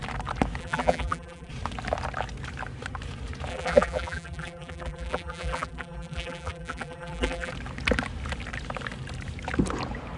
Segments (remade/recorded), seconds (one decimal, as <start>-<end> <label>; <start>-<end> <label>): 0.0-0.6 recorded; 0.6-1.5 remade; 1.5-3.5 recorded; 3.5-7.5 remade; 7.5-10.2 recorded